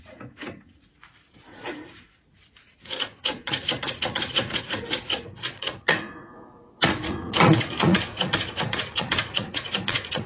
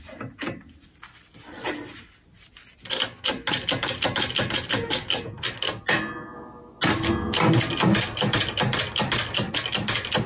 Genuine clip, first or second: second